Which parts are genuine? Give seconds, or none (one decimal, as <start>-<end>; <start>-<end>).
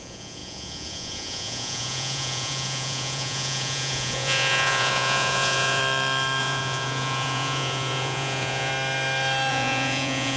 5.8-6.4; 8.7-9.5